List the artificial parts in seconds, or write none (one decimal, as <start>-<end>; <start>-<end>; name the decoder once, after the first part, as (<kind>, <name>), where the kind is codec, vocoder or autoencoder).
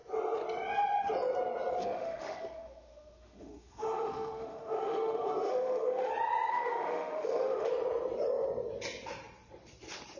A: 1.8-6.1 (autoencoder, DAC-VAE); 6.5-7.7